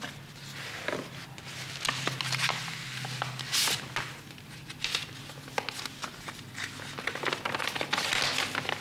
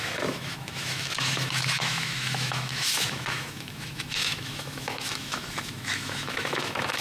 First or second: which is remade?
second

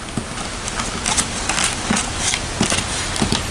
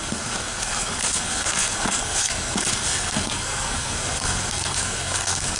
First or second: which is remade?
second